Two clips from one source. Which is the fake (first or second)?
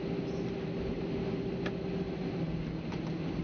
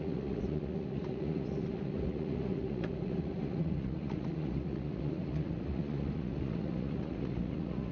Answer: second